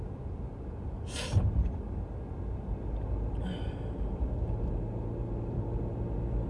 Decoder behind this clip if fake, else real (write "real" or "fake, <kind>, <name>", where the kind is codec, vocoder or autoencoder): real